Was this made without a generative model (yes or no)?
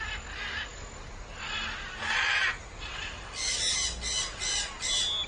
yes